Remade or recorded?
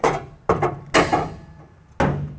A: recorded